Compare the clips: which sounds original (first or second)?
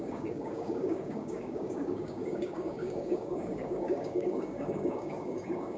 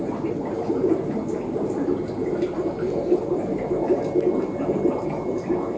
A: second